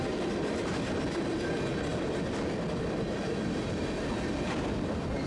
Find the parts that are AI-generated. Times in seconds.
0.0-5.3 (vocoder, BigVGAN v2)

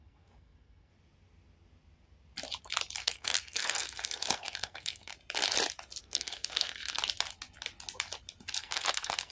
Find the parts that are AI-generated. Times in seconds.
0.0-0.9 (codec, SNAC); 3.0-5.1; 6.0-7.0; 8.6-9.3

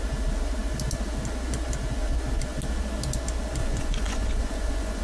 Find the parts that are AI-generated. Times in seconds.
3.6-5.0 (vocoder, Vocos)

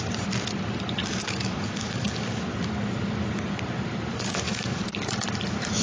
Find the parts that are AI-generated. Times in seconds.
1.0-2.4 (codec, DAC); 4.1-4.8